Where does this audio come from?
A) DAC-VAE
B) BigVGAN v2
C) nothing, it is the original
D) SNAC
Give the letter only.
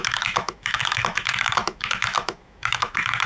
A